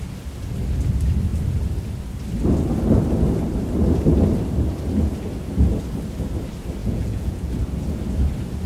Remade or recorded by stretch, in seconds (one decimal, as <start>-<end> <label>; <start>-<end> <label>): 0.0-6.8 recorded; 6.8-7.5 remade; 7.5-8.7 recorded